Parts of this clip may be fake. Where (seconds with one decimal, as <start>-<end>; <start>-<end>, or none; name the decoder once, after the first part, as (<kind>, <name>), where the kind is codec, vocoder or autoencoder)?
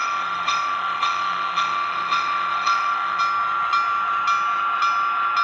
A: 0.0-3.2 (autoencoder, DAC-VAE)